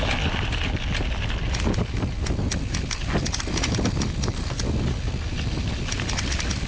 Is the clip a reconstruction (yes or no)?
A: no